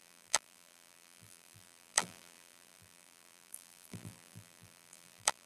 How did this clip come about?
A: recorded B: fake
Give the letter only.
B